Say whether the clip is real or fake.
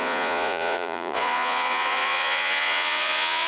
fake